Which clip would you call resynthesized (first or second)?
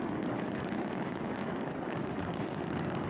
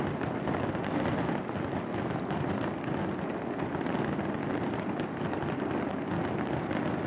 first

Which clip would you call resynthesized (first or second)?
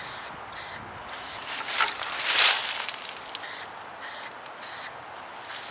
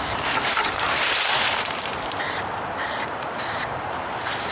second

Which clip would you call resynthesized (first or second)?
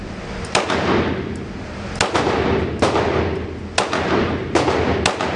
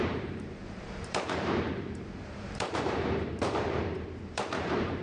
second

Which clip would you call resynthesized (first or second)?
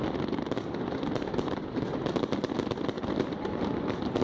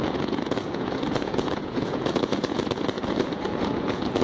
second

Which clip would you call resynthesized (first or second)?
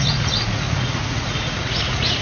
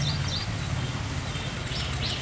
first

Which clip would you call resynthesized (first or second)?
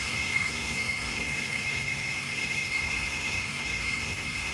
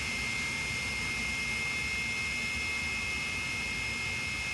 first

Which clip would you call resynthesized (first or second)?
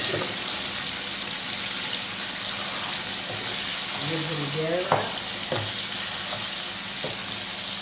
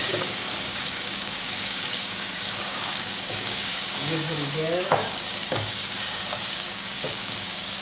second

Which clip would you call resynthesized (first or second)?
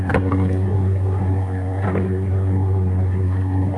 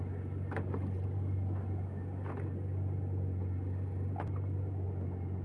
first